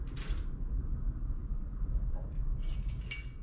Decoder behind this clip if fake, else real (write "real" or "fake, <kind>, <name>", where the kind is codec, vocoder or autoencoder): real